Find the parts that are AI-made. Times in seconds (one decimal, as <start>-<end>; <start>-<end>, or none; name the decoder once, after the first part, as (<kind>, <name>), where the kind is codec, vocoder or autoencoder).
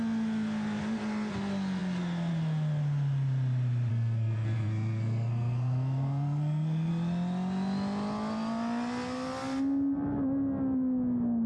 3.9-6.9 (codec, SNAC)